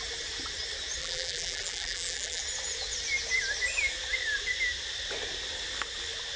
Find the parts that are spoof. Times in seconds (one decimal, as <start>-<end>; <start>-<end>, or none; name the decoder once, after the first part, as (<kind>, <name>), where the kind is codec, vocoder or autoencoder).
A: 1.0-2.4 (vocoder, BigVGAN v2)